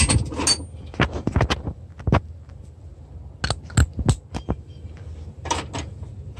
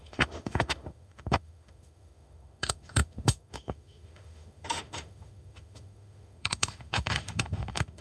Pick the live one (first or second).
first